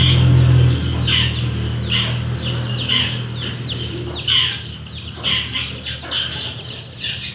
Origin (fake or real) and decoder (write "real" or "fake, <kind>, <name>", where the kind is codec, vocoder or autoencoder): real